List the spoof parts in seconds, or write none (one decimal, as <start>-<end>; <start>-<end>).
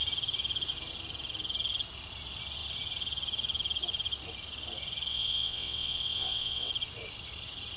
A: 5.1-6.7